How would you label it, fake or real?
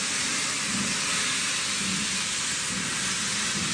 real